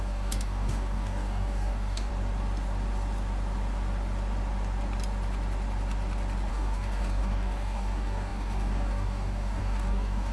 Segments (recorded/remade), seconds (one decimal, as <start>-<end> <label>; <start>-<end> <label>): 0.0-2.1 remade; 2.1-6.5 recorded; 6.5-10.3 remade